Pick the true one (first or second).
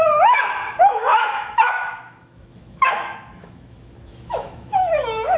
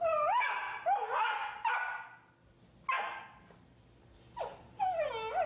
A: second